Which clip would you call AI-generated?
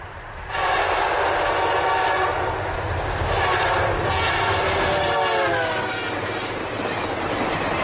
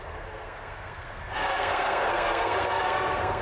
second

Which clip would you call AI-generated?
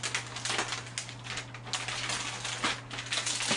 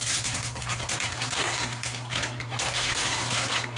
second